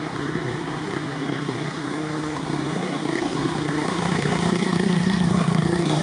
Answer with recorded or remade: remade